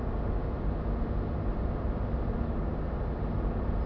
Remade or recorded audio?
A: recorded